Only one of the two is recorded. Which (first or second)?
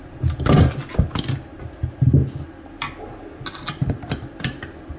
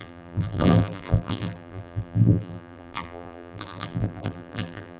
first